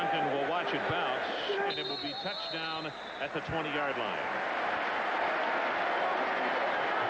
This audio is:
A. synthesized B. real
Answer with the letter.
B